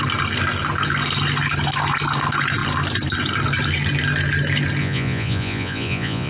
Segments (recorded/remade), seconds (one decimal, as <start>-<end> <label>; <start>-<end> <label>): 0.0-4.8 recorded; 4.8-6.3 remade